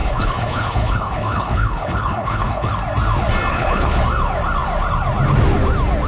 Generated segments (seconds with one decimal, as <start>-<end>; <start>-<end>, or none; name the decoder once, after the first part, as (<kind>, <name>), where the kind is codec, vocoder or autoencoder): 0.0-2.7 (codec, HILCodec); 3.5-4.0